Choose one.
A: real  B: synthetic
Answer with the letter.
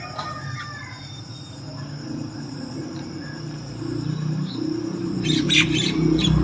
B